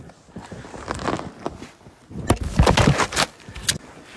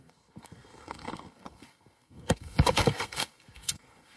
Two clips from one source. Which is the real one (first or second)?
first